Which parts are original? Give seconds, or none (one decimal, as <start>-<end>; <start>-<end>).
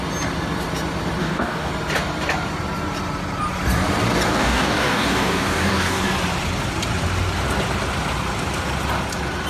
0.0-1.2; 1.7-4.3; 6.0-9.5